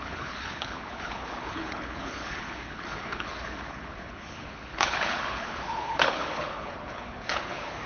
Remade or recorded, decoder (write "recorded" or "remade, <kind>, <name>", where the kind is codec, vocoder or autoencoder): remade, codec, HILCodec